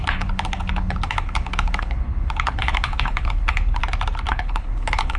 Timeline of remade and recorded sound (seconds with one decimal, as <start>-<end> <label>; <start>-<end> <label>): 0.0-3.8 remade; 3.8-4.3 recorded; 4.3-5.2 remade